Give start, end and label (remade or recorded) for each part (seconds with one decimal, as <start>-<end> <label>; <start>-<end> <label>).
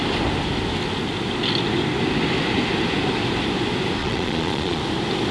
0.0-4.0 recorded; 4.0-4.8 remade; 4.8-5.3 recorded